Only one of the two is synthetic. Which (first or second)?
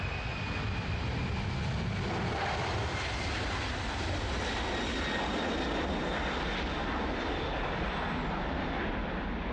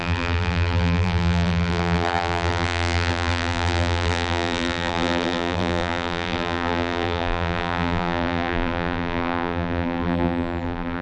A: second